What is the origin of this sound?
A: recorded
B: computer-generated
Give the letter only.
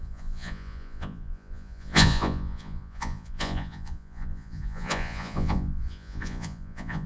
B